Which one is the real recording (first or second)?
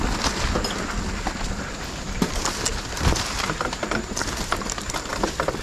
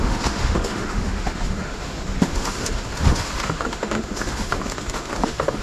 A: first